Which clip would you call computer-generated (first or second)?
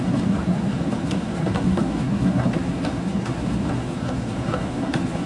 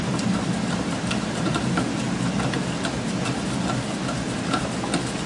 first